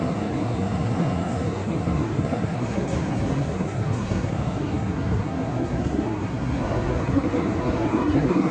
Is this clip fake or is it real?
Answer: fake